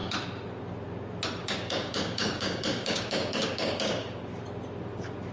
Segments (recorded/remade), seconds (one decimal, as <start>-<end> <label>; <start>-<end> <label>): 0.0-1.4 recorded; 1.4-4.2 remade; 4.2-5.3 recorded